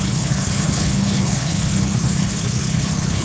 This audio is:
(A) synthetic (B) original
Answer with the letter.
A